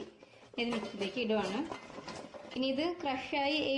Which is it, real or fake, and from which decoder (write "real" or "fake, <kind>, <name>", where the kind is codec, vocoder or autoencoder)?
real